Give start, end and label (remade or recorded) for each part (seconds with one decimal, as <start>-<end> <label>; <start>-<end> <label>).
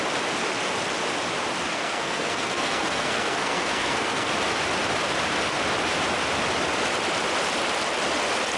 0.0-1.7 recorded; 1.7-4.3 remade; 4.3-8.6 recorded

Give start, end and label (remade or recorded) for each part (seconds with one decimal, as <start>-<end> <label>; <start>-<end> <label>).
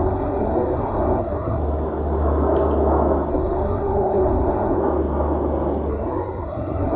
0.0-1.6 remade; 1.6-3.3 recorded; 3.3-4.8 remade; 4.8-5.9 recorded; 5.9-7.0 remade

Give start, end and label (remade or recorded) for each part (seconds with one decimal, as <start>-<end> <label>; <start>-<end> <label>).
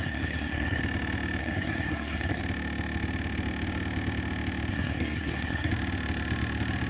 0.0-0.8 remade; 0.8-1.4 recorded; 1.4-2.4 remade; 2.4-4.7 recorded; 4.7-5.7 remade; 5.7-6.9 recorded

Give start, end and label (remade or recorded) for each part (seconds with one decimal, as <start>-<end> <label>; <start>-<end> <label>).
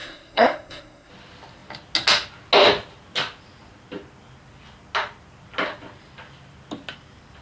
0.0-1.1 remade; 1.1-7.4 recorded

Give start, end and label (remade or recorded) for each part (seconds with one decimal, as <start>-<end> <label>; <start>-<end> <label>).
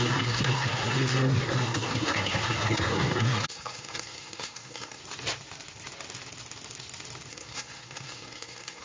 0.0-5.0 remade; 5.0-7.3 recorded; 7.3-8.8 remade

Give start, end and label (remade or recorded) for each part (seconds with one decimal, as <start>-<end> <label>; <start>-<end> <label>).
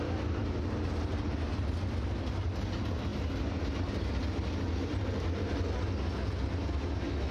0.0-7.3 recorded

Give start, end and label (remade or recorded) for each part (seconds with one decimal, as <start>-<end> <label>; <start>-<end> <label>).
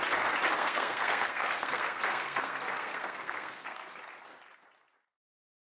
0.0-0.5 recorded; 0.5-3.9 remade; 3.9-5.6 recorded